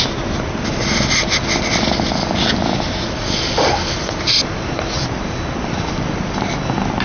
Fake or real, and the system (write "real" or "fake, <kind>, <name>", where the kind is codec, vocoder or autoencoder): real